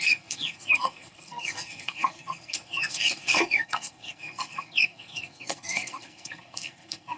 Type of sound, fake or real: fake